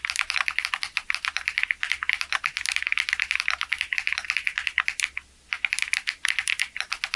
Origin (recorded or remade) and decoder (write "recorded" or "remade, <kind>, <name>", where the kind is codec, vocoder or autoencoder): recorded